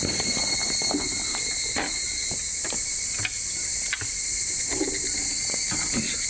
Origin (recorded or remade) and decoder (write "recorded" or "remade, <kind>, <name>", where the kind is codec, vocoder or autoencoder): recorded